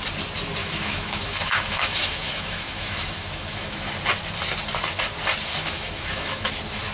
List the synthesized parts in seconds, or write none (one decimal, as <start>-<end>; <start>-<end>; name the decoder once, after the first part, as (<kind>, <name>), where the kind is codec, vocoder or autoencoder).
0.6-3.9 (autoencoder, DAC-VAE); 5.5-6.5